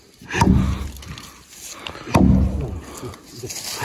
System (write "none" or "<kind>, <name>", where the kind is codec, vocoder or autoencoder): none